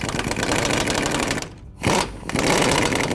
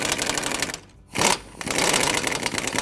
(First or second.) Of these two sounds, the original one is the second